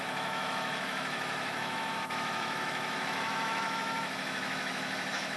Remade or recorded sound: remade